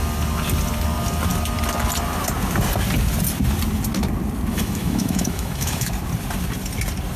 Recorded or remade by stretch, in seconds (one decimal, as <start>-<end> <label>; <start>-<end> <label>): 0.0-4.5 recorded; 4.5-5.9 remade; 5.9-7.2 recorded